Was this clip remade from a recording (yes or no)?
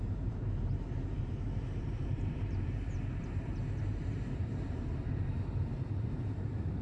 yes